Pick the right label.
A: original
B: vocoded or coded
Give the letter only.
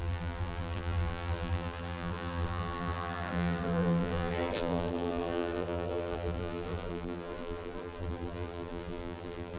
B